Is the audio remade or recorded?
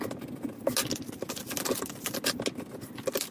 recorded